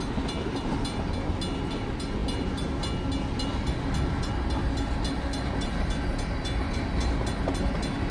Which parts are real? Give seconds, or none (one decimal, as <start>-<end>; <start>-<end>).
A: 0.0-8.1